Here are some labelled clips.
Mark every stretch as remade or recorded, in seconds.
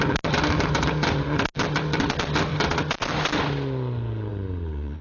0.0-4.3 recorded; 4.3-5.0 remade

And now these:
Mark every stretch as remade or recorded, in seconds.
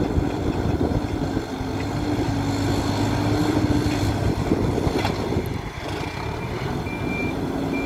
0.0-3.4 recorded; 3.4-4.7 remade; 4.7-7.9 recorded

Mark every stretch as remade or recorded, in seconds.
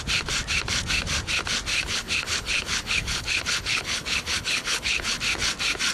0.0-1.7 recorded; 1.7-5.2 remade; 5.2-5.9 recorded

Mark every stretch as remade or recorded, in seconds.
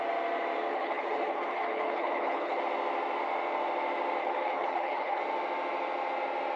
0.0-0.7 recorded; 0.7-2.6 remade; 2.6-4.2 recorded; 4.2-5.2 remade; 5.2-6.6 recorded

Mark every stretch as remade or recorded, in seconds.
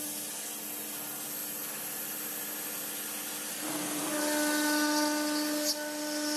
0.0-3.5 recorded; 3.5-4.0 remade; 4.0-6.4 recorded